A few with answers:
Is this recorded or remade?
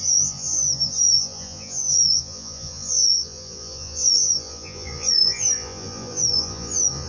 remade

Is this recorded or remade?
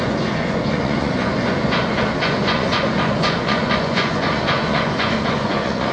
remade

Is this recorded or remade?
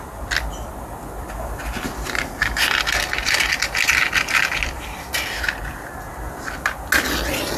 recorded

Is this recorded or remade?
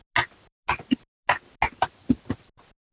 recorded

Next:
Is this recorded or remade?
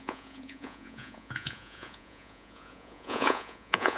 remade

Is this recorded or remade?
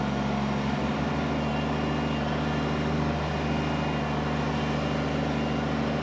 recorded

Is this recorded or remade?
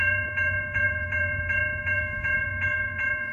remade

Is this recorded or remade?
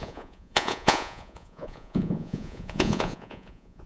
remade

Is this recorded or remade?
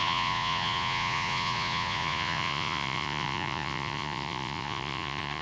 remade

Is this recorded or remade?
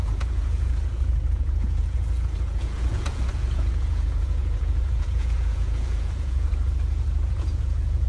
remade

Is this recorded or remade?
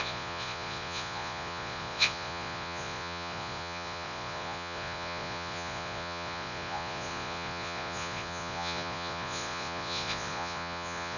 remade